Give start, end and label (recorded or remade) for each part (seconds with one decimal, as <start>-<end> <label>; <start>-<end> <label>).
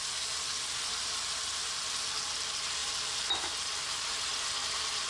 0.0-2.8 recorded; 2.8-3.8 remade; 3.8-5.1 recorded